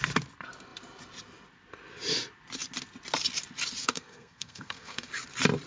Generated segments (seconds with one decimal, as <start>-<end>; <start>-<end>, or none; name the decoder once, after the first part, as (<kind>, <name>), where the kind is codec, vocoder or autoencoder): 3.8-5.1 (codec, SNAC)